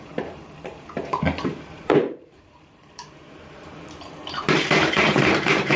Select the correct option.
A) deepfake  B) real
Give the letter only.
A